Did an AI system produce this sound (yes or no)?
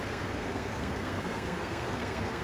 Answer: yes